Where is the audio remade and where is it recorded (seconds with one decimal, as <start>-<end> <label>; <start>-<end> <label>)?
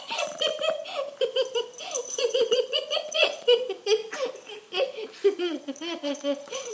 0.0-0.5 remade; 0.5-2.1 recorded; 2.1-4.0 remade; 4.0-5.4 recorded; 5.4-6.7 remade